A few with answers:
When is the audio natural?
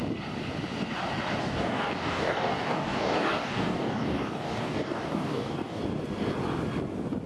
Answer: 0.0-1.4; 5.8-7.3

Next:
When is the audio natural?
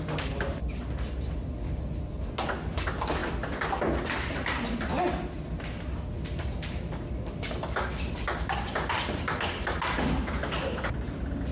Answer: 0.0-11.5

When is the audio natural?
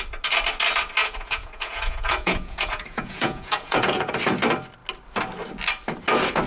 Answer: 0.0-1.0; 4.1-6.5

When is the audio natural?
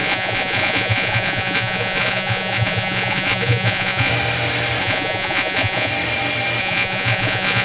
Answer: 4.1-4.8; 5.9-6.6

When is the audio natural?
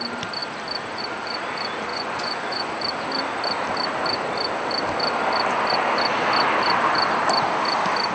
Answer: 0.0-1.9; 2.7-8.1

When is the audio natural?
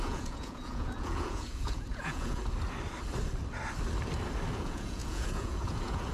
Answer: 2.4-4.5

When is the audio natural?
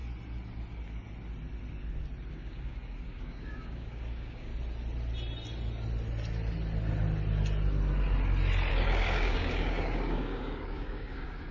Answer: 0.0-2.3; 4.5-8.7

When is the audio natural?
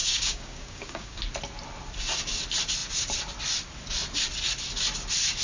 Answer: 1.2-5.4